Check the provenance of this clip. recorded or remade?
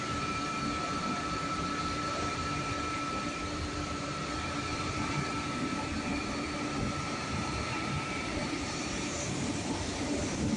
remade